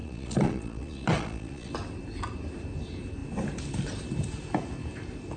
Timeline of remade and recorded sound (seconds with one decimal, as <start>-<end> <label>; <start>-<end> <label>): 0.0-1.7 remade; 1.7-5.4 recorded